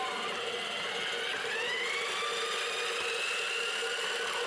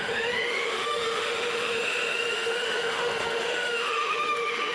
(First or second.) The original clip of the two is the first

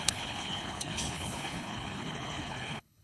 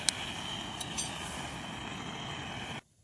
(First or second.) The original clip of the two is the second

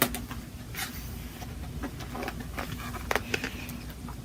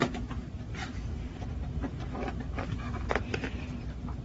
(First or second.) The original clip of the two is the first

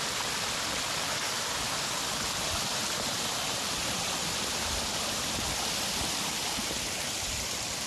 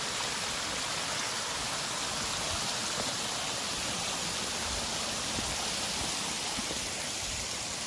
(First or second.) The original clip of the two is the second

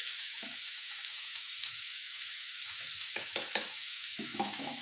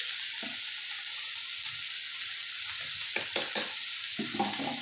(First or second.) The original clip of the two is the second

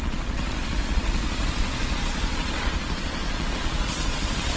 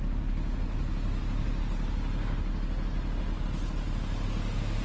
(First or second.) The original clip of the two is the second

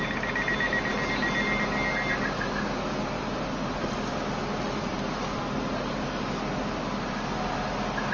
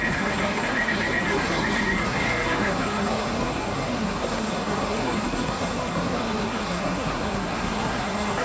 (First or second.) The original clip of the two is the first